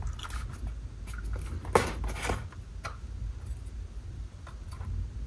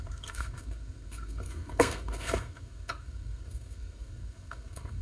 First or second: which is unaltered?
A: first